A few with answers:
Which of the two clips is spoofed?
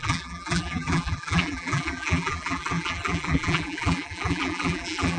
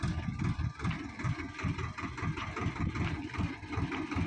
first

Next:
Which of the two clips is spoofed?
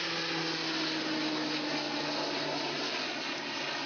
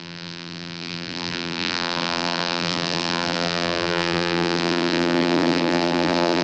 second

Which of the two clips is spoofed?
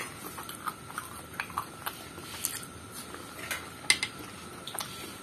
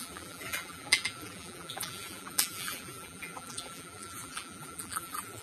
second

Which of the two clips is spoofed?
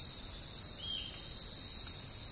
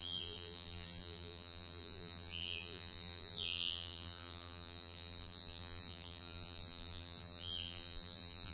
second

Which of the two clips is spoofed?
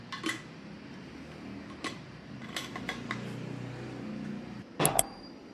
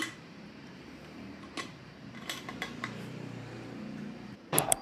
second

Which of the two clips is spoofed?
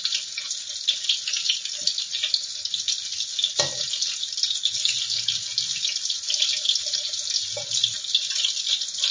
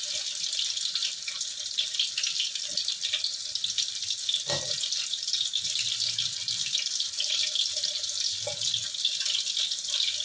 second